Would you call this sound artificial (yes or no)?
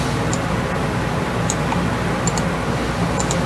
no